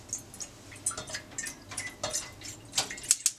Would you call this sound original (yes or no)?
yes